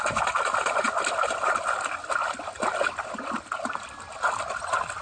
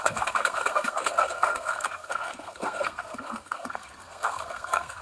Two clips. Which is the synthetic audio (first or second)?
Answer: second